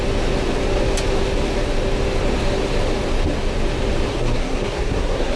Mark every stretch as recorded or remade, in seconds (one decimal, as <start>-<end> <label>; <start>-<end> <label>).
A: 0.0-4.1 recorded; 4.1-5.4 remade